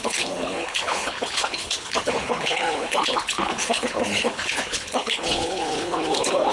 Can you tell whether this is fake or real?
fake